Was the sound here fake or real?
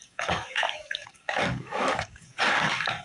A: fake